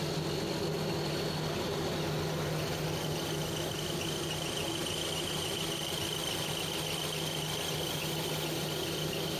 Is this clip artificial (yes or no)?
no